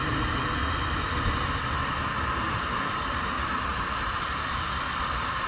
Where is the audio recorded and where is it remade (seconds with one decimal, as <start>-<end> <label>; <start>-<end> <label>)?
0.0-5.5 remade